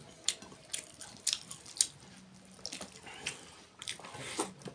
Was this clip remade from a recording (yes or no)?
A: no